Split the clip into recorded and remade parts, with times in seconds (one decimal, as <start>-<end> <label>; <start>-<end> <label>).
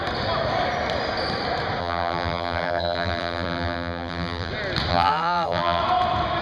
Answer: 0.0-1.8 recorded; 1.8-4.5 remade; 4.5-4.9 recorded; 4.9-5.8 remade; 5.8-6.4 recorded